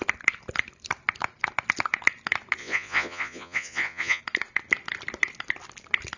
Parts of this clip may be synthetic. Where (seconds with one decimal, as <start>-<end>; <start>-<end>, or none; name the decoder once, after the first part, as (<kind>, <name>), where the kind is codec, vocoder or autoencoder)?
2.6-4.2 (vocoder, Vocos)